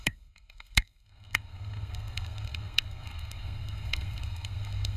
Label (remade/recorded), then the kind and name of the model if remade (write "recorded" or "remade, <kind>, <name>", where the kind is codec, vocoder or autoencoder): remade, codec, SNAC